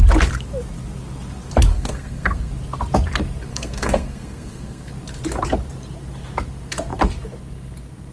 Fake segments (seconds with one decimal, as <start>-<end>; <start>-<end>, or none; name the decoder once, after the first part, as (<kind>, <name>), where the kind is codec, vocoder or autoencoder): 1.7-2.5 (codec, SNAC); 3.5-4.9

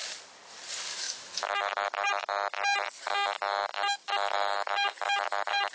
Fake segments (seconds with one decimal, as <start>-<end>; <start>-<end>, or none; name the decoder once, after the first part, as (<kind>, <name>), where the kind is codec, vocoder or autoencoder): 0.9-2.1 (autoencoder, DAC-VAE); 3.7-5.7

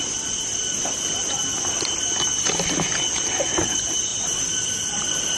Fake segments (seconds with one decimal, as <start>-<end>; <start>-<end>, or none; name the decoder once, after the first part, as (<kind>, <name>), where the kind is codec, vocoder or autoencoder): none

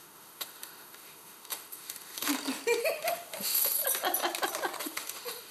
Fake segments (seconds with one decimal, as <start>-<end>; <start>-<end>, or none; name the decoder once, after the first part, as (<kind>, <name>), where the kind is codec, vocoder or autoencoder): 0.0-2.3 (autoencoder, DAC-VAE); 2.8-3.8; 4.8-5.5

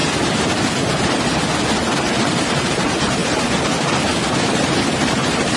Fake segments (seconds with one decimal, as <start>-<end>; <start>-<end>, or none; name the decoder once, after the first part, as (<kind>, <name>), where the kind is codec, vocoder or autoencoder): 2.0-3.2 (vocoder, BigVGAN v2); 4.5-5.6

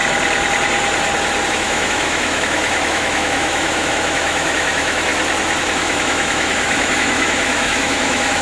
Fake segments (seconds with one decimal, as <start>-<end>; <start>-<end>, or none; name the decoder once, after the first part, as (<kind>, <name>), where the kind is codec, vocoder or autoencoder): 1.5-5.1 (autoencoder, DAC-VAE); 5.6-8.4

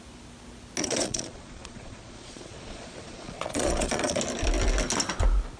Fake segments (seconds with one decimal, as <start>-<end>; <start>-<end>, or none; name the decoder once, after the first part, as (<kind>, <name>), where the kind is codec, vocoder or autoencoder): 0.8-4.2 (vocoder, Vocos)